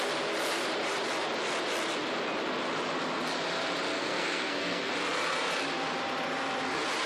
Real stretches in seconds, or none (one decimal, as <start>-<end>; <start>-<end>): 0.0-4.0; 4.9-7.1